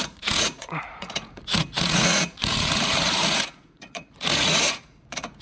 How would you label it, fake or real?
fake